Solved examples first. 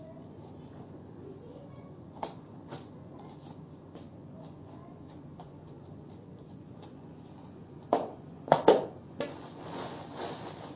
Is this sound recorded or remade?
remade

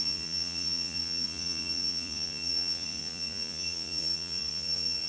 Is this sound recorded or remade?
remade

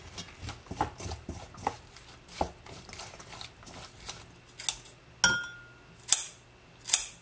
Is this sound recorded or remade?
recorded